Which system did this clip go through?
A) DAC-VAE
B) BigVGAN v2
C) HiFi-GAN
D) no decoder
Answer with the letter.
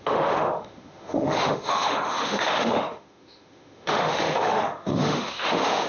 A